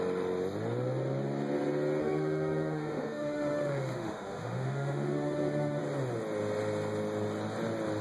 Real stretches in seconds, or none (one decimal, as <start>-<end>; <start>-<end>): 0.0-2.0; 5.8-8.0